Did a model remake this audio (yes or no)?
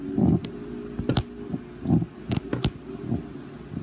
no